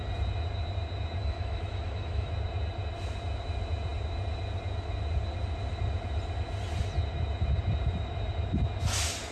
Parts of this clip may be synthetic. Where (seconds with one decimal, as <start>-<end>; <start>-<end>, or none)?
1.2-2.3